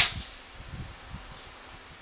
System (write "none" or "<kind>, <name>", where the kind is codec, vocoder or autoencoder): none